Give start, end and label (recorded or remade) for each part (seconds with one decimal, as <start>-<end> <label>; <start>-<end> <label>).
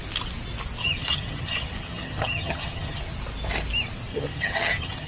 0.0-0.8 recorded; 0.8-3.0 remade; 3.0-4.1 recorded; 4.1-5.1 remade